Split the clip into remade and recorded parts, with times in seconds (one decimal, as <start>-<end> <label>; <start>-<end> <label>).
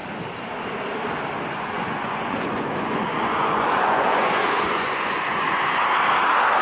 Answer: 0.0-1.5 recorded; 1.5-5.8 remade; 5.8-6.6 recorded